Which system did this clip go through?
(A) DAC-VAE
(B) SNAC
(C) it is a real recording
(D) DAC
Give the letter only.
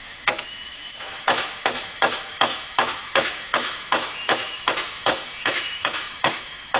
A